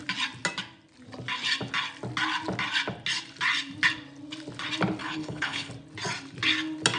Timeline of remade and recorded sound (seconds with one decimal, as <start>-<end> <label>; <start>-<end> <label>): 0.0-5.0 recorded; 5.0-5.7 remade; 5.7-7.0 recorded